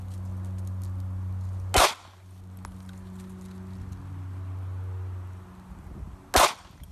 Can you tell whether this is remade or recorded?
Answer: recorded